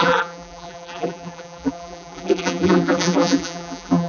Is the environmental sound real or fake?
fake